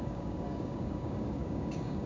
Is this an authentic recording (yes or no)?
no